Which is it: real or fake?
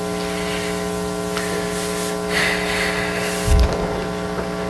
real